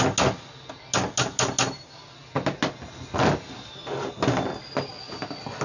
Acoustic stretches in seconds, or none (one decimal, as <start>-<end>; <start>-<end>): 0.0-5.6